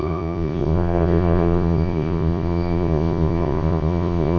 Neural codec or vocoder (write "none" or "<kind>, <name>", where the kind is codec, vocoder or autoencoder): vocoder, Vocos